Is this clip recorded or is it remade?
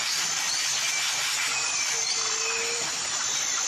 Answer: recorded